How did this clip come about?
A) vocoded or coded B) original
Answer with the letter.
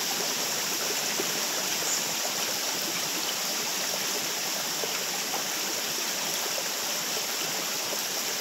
B